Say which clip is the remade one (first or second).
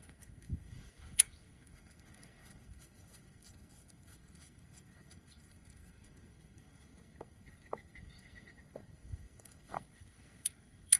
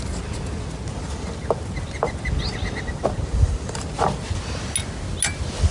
first